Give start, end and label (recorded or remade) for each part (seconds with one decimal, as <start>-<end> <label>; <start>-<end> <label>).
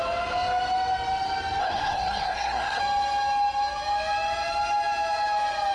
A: 0.0-1.6 recorded; 1.6-2.8 remade; 2.8-5.7 recorded